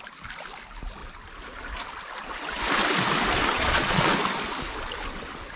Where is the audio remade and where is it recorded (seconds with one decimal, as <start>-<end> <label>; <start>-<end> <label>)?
0.0-3.4 recorded; 3.4-4.1 remade; 4.1-5.6 recorded